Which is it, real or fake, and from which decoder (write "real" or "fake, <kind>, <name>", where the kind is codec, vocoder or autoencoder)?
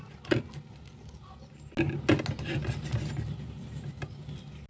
real